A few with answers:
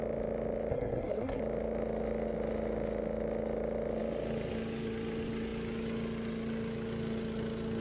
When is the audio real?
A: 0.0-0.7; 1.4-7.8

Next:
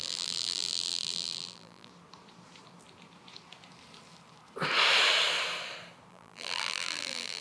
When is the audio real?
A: 1.9-6.1